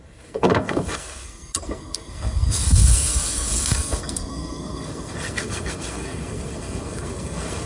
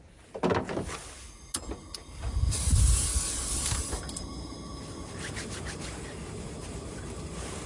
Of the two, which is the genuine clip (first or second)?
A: second